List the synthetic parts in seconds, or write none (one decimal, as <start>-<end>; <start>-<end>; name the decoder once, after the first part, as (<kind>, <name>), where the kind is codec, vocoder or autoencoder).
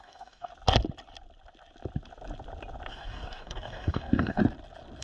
0.0-0.5 (codec, DAC); 2.9-4.4